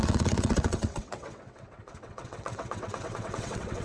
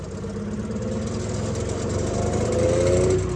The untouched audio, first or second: second